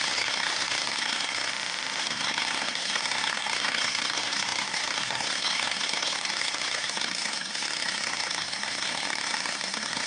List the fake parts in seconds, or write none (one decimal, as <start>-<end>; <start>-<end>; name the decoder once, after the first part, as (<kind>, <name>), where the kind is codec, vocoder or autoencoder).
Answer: 0.0-1.5 (codec, SNAC); 2.0-10.1